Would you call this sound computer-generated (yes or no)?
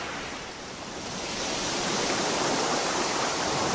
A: yes